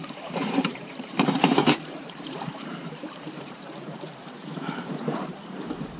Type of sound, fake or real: fake